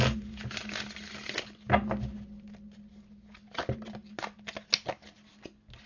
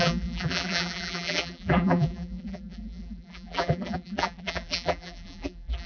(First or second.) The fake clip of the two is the second